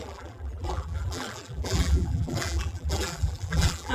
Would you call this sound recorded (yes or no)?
no